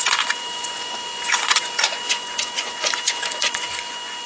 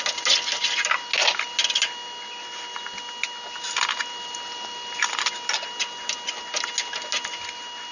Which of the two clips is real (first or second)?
second